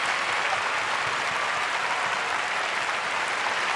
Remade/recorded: recorded